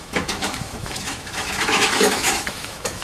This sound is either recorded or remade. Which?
remade